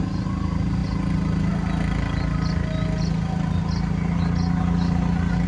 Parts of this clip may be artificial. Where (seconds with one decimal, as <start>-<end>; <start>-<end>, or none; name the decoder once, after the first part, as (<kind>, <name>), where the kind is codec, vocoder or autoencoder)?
none

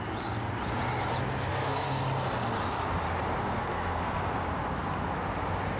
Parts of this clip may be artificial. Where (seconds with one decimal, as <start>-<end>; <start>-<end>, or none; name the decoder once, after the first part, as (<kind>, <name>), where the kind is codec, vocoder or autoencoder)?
1.5-2.0 (codec, SNAC); 3.4-4.3

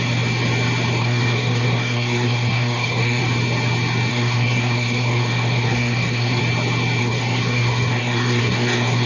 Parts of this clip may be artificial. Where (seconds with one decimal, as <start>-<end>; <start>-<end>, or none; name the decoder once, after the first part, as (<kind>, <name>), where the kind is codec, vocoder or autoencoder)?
1.0-3.2 (codec, SNAC); 4.1-6.4; 7.0-9.1

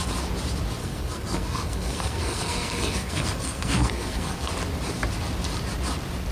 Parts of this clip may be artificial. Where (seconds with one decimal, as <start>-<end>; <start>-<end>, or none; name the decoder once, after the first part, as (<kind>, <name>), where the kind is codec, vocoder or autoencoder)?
0.8-4.5 (codec, SNAC)

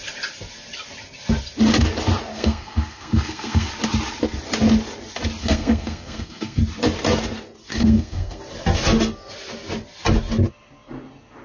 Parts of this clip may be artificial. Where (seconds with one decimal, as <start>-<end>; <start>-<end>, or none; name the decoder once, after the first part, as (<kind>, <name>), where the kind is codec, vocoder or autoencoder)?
2.3-3.7 (codec, SNAC); 5.4-6.6; 7.7-8.4

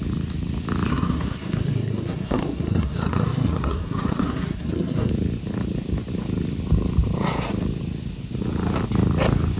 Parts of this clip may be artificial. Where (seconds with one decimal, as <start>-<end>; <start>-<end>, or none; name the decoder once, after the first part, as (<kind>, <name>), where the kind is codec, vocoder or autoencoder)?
0.9-5.1 (codec, SNAC)

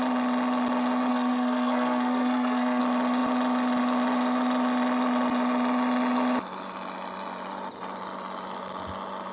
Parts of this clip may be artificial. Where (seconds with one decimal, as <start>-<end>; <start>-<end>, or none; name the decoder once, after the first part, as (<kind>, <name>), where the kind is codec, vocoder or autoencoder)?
1.1-2.8 (codec, SNAC)

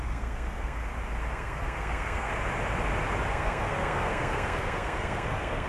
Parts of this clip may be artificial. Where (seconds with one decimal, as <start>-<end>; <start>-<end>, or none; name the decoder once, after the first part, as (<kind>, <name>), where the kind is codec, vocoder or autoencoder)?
0.0-0.8 (codec, SNAC); 1.3-2.3; 3.3-5.7